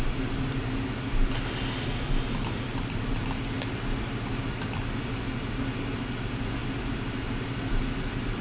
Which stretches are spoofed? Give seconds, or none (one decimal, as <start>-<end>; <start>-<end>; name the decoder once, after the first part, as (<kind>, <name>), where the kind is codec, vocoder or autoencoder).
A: none